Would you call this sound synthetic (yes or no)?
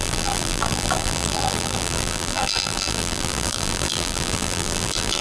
yes